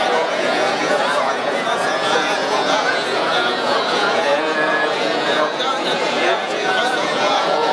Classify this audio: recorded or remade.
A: remade